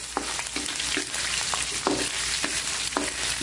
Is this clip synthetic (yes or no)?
no